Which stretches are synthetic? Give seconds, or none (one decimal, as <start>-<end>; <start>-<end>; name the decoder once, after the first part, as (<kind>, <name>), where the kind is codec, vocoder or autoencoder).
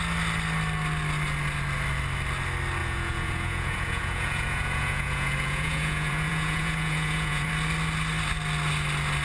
2.8-7.5 (vocoder, Vocos)